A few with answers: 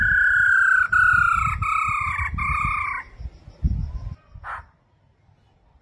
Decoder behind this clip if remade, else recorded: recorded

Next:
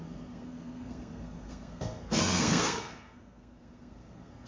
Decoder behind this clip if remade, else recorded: remade, codec, SNAC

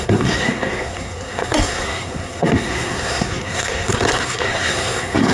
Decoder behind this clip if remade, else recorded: remade, codec, SNAC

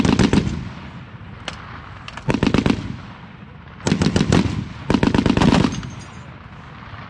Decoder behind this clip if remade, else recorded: recorded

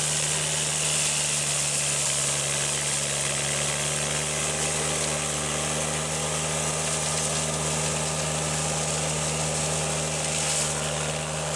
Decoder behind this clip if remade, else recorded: recorded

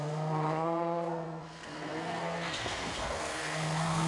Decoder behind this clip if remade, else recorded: remade, codec, SNAC